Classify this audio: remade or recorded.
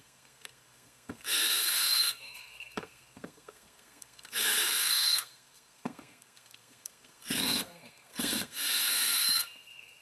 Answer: remade